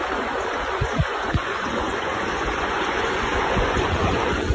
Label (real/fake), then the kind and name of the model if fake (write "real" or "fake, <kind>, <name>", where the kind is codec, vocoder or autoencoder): fake, vocoder, Vocos